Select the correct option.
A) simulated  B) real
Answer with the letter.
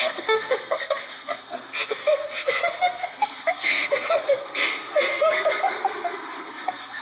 A